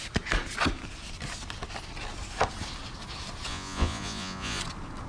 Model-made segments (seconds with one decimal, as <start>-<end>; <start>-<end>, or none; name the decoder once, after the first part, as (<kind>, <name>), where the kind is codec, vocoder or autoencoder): 3.5-4.6 (vocoder, Vocos)